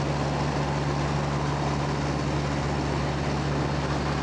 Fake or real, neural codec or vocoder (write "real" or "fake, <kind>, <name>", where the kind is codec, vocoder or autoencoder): real